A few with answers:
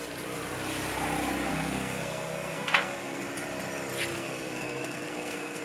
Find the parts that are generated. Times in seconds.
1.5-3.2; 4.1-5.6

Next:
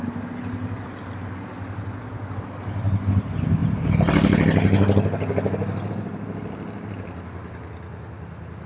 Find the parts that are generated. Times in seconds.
none

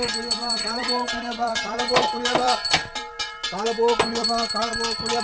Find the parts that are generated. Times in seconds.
0.4-2.7; 4.1-4.7

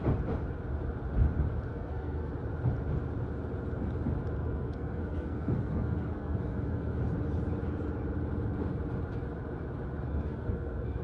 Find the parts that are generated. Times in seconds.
1.7-2.3; 4.4-7.0; 10.1-11.0

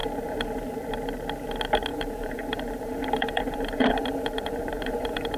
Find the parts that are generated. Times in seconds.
0.0-0.9; 1.9-5.4

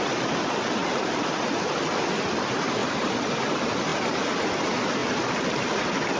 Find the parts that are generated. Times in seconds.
0.8-1.4; 2.8-3.3; 5.0-5.8